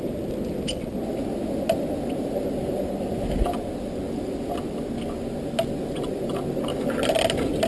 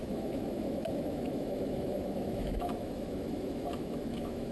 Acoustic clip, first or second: first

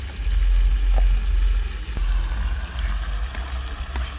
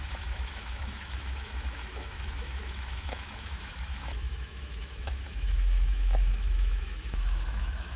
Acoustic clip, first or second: first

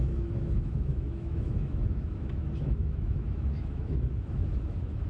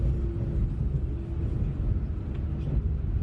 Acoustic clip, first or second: second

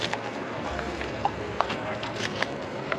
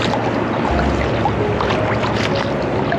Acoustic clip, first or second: second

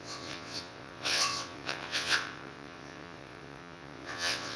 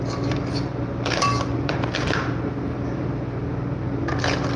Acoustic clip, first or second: second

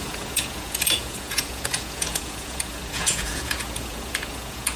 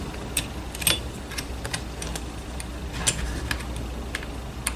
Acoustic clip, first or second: second